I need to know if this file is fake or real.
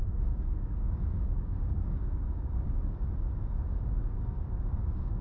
fake